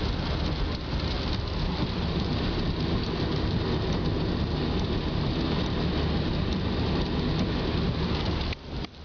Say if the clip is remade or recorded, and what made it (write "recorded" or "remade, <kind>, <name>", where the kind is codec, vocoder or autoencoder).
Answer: recorded